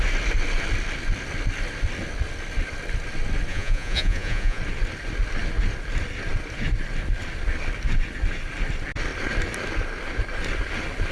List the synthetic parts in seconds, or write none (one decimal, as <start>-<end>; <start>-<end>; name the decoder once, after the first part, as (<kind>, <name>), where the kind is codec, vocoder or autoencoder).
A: 3.5-4.6 (vocoder, Vocos)